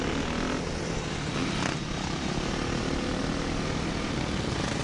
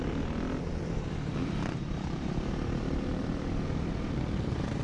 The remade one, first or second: second